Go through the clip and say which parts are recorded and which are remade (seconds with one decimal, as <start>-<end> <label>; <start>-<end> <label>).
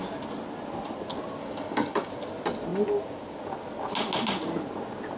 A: 0.0-1.4 recorded; 1.4-2.1 remade; 2.1-5.2 recorded